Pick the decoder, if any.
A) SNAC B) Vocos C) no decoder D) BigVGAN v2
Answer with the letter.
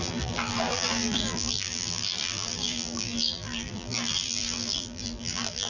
D